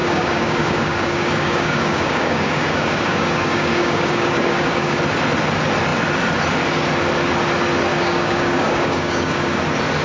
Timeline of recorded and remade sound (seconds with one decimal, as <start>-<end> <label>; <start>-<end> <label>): 0.0-5.0 remade; 5.0-7.9 recorded; 7.9-9.6 remade; 9.6-10.0 recorded